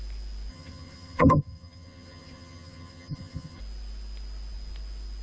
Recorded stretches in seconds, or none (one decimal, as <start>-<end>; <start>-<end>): 0.0-0.5; 3.6-5.2